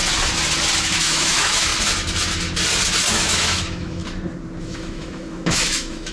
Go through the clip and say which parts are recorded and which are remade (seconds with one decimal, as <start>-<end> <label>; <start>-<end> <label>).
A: 0.0-0.8 recorded; 0.8-1.7 remade; 1.7-3.1 recorded; 3.1-4.0 remade; 4.0-4.6 recorded; 4.6-6.1 remade